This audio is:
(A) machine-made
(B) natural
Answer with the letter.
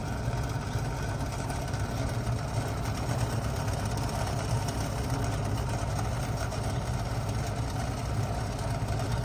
B